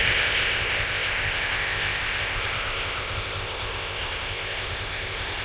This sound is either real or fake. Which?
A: fake